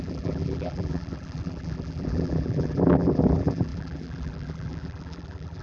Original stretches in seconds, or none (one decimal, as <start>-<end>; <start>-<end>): none